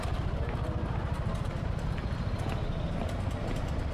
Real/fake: real